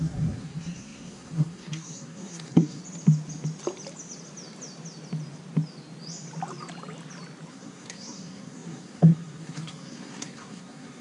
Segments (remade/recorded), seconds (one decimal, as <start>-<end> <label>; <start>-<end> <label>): 0.0-2.8 remade; 2.8-7.5 recorded; 7.5-11.0 remade